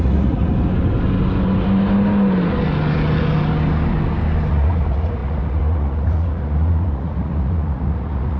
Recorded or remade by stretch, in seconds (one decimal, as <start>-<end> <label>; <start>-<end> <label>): 0.0-0.5 remade; 0.5-4.5 recorded; 4.5-8.4 remade